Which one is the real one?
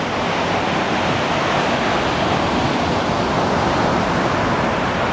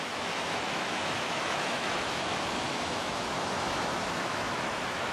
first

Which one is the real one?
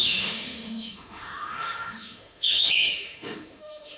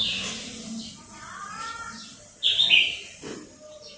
second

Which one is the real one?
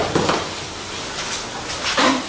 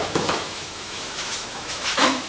first